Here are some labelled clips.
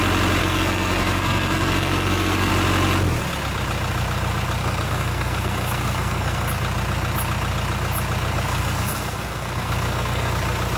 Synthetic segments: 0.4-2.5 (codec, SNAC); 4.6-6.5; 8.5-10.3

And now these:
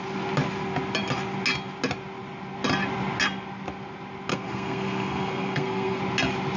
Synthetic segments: 4.3-6.0 (codec, SNAC)

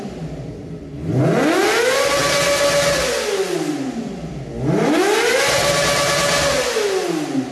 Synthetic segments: none

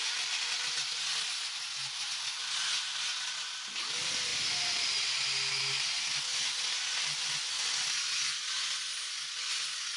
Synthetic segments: none

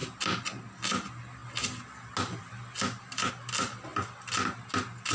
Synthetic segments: none